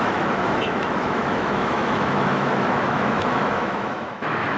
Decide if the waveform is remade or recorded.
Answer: remade